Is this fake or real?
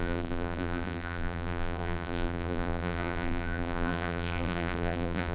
fake